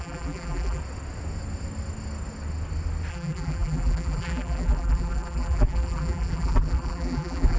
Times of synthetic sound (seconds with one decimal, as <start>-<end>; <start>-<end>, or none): 0.0-0.8; 3.1-7.6